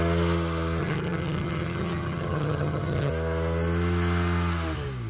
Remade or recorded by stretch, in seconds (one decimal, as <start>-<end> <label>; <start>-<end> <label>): 0.0-0.8 recorded; 0.8-3.1 remade; 3.1-5.1 recorded